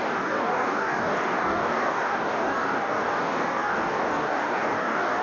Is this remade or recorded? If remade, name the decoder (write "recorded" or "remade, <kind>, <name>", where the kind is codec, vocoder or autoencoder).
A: remade, codec, DAC